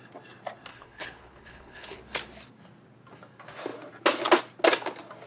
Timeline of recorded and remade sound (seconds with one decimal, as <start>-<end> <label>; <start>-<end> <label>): 0.0-0.7 recorded; 0.7-2.0 remade; 2.0-5.3 recorded